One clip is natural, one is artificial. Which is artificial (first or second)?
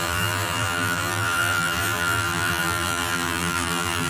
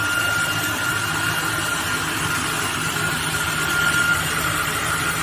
first